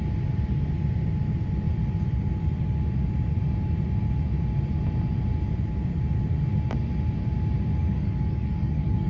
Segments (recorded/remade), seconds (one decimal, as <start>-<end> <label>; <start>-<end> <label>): 0.0-7.8 recorded; 7.8-9.1 remade